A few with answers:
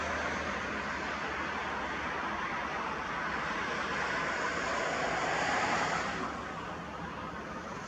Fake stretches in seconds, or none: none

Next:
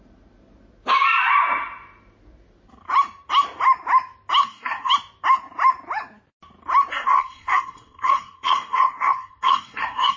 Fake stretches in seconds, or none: 4.4-4.9 (codec, SNAC); 6.9-10.2